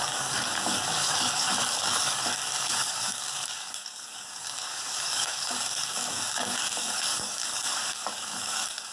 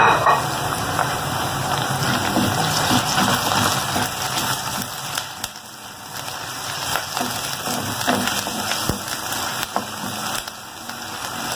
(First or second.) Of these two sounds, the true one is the second